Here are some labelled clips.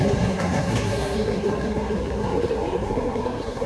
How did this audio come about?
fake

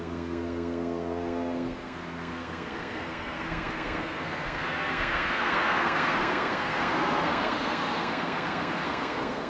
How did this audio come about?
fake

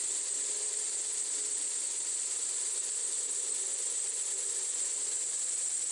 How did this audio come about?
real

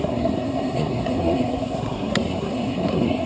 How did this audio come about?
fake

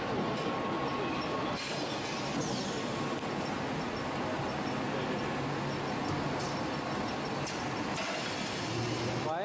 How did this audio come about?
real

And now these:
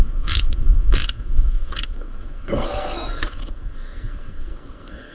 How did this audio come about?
fake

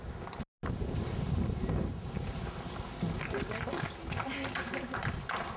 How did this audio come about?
real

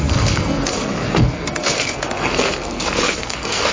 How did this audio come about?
fake